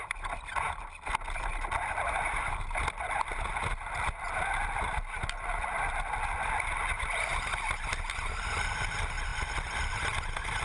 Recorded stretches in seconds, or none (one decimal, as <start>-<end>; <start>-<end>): 0.0-10.6